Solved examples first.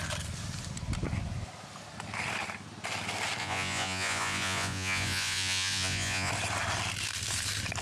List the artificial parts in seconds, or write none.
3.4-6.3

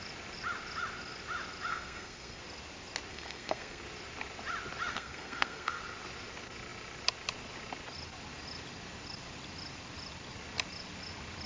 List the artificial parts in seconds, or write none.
1.7-2.4; 3.1-3.8; 4.9-5.8

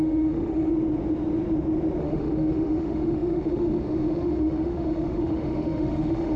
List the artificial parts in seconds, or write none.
0.0-0.7; 2.0-6.4

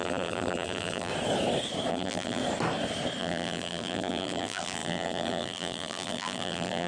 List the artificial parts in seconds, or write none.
0.0-1.1; 1.9-2.4; 3.2-6.9

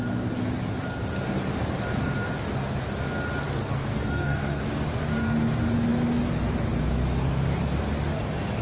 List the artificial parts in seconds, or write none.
3.6-4.6

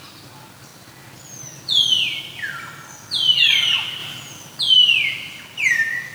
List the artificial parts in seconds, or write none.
none

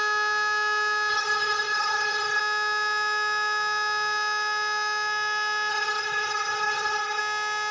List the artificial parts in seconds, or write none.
1.1-2.4; 5.7-7.2